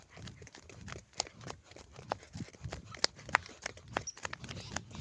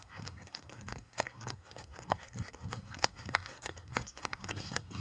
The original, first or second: first